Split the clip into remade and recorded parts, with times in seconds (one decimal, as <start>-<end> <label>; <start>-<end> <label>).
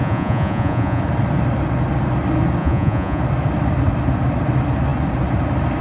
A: 0.0-1.0 remade; 1.0-2.6 recorded; 2.6-3.2 remade; 3.2-5.8 recorded